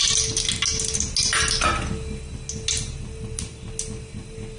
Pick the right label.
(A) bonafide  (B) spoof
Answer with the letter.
A